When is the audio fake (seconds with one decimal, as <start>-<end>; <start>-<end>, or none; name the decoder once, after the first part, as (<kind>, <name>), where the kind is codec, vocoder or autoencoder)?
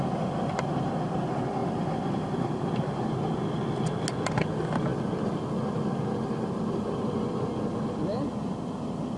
1.6-2.5 (vocoder, BigVGAN v2); 4.9-7.0